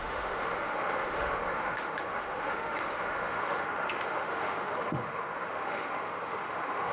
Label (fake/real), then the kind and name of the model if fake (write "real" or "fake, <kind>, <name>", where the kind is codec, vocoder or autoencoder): fake, autoencoder, DAC-VAE